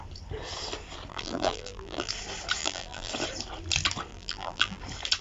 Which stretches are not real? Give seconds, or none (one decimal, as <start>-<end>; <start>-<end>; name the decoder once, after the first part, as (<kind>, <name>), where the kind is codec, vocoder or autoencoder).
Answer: 1.1-2.1 (vocoder, BigVGAN v2); 2.6-3.1; 4.1-4.8